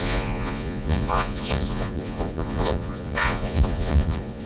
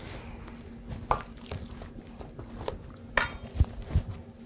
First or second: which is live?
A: second